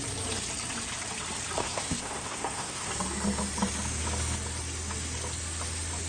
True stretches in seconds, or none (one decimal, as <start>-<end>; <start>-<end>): 0.0-1.6; 2.9-6.1